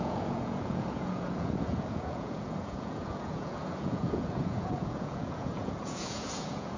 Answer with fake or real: fake